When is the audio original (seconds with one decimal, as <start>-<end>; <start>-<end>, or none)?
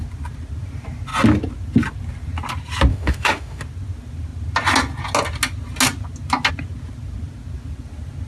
0.0-2.9; 3.6-8.3